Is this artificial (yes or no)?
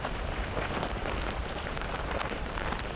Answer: yes